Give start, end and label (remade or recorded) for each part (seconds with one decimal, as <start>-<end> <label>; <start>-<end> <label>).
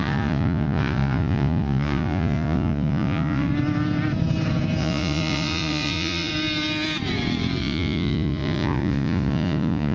0.0-3.5 remade; 3.5-4.8 recorded; 4.8-6.3 remade; 6.3-7.6 recorded; 7.6-9.9 remade